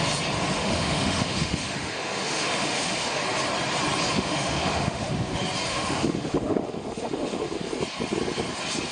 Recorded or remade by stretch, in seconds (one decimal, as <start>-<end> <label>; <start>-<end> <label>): 0.0-0.6 recorded; 0.6-3.2 remade; 3.2-4.1 recorded; 4.1-5.1 remade; 5.1-5.7 recorded; 5.7-7.8 remade; 7.8-8.9 recorded

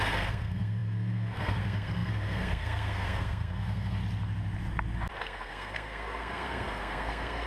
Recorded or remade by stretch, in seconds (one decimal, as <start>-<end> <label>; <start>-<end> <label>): 0.0-4.0 remade; 4.0-5.2 recorded; 5.2-7.5 remade